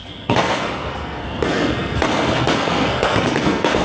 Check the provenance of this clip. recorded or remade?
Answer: remade